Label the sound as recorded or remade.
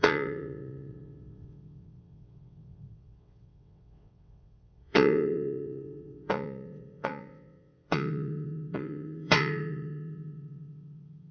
remade